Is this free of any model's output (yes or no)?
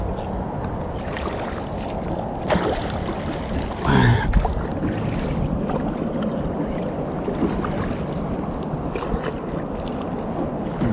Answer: yes